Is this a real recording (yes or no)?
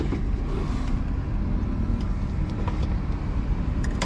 no